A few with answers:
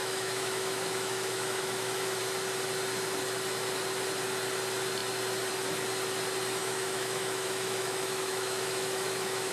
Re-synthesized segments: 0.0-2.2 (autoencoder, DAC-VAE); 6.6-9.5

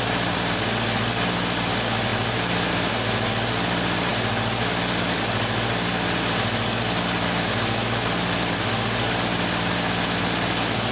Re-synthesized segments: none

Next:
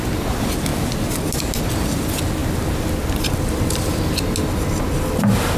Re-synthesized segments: none